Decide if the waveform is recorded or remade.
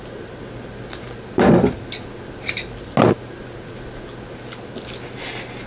recorded